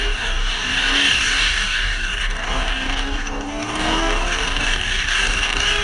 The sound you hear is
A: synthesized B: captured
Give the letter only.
A